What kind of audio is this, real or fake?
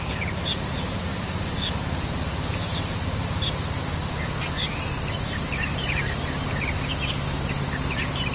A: real